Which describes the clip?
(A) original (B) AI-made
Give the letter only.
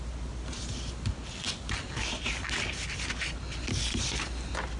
A